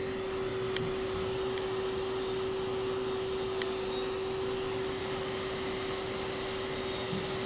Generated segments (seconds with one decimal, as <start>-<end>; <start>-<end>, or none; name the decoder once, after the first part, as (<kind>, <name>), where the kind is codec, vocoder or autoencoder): none